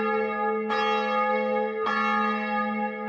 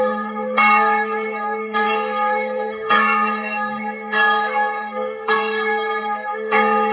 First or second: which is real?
first